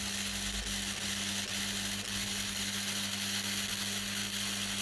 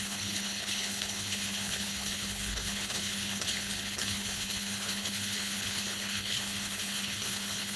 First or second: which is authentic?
first